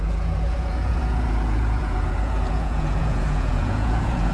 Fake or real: fake